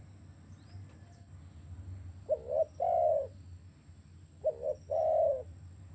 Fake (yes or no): no